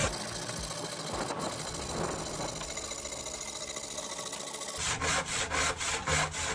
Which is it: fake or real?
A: real